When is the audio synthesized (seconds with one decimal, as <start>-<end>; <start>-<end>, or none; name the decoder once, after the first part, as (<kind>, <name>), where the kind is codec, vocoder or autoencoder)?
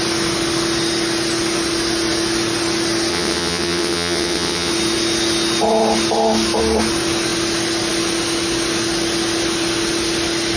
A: 3.1-4.7 (vocoder, WaveNeXt)